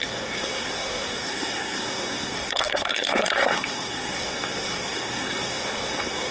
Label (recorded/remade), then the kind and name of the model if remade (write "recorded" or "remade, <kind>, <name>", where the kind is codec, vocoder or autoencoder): remade, codec, SNAC